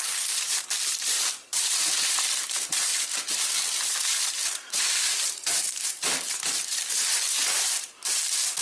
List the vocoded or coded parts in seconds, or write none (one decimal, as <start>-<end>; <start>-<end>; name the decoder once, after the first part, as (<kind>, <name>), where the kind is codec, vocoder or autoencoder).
0.0-8.6 (vocoder, BigVGAN v2)